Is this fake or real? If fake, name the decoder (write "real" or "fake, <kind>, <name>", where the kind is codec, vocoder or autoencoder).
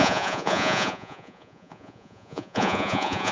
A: fake, vocoder, Vocos